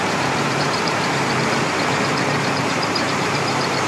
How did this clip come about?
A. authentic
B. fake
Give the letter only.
B